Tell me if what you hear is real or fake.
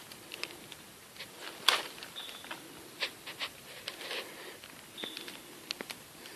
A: real